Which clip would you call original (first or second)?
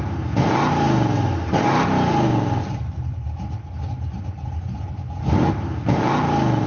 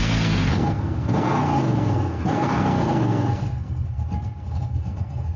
first